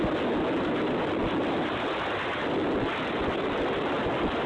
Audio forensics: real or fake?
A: real